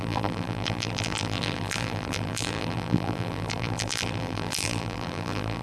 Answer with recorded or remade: remade